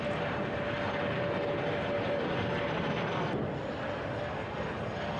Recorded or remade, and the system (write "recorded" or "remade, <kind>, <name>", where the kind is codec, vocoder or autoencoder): recorded